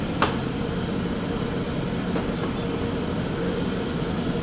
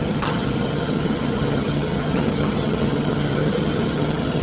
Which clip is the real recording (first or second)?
first